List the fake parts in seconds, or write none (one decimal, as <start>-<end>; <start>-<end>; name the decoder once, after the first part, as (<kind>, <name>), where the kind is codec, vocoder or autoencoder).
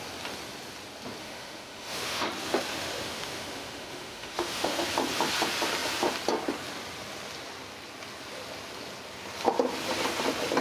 1.2-2.3 (autoencoder, DAC-VAE); 2.7-4.9